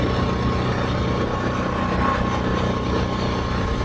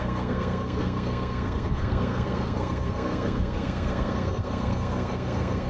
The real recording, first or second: first